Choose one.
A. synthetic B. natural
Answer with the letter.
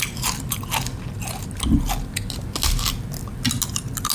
B